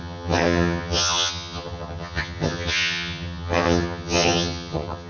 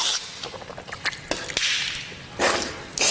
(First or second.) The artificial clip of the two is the first